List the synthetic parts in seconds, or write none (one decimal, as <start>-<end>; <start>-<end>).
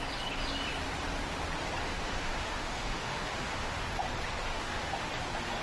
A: 1.8-3.8; 4.5-5.1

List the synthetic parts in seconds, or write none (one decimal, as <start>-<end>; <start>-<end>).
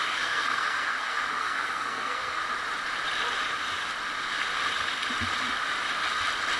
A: 0.0-2.4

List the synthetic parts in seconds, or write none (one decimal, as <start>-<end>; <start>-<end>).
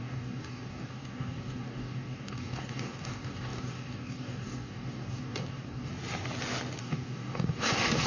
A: 0.0-5.9; 6.8-8.1